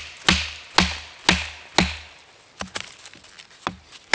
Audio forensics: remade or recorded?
recorded